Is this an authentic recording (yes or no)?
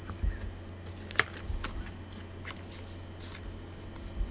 yes